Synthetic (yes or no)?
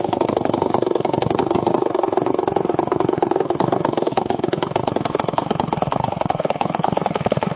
yes